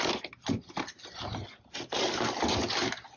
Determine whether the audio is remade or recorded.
recorded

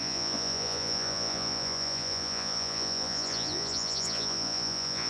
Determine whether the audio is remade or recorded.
remade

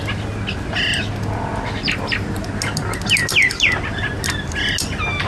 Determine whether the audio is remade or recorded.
recorded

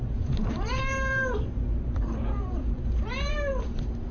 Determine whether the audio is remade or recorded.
remade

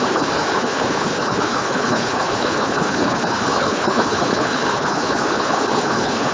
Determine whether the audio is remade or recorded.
remade